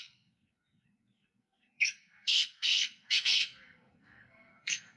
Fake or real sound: fake